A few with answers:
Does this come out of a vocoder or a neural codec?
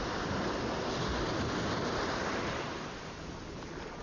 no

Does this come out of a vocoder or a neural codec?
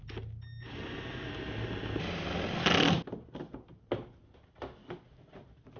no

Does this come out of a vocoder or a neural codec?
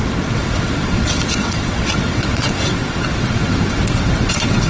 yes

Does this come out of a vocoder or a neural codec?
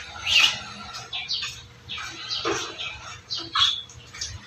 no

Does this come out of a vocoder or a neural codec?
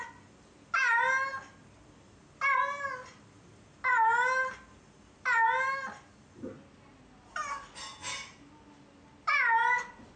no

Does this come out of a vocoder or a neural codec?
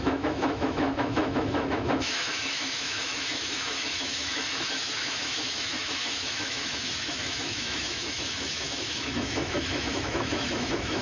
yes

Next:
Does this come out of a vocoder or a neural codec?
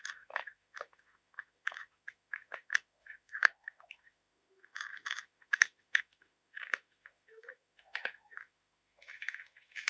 yes